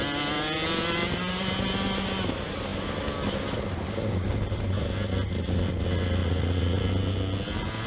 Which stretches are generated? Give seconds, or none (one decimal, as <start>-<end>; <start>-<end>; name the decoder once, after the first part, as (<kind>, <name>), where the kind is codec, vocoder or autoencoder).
6.2-6.8 (vocoder, Vocos)